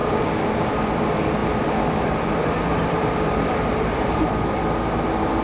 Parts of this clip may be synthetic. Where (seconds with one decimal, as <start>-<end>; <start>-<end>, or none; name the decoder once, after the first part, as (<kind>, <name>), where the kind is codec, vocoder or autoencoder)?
1.4-4.6 (vocoder, BigVGAN v2)